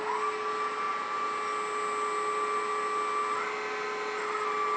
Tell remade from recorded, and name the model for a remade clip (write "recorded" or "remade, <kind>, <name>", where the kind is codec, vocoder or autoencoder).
recorded